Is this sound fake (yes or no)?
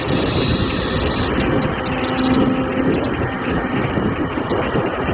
no